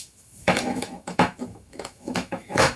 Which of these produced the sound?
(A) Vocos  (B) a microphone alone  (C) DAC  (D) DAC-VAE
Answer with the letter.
D